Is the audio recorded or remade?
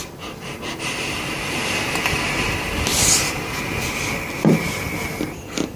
recorded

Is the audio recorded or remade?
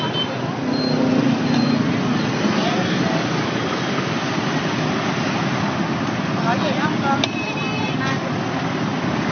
recorded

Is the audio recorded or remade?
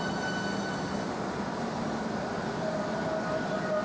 recorded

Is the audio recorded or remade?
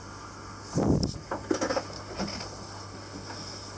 recorded